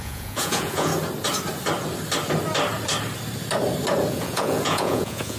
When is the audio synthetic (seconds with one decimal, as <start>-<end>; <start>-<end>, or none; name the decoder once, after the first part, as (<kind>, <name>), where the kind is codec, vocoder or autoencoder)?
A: 0.0-0.9 (vocoder, Vocos); 4.1-5.4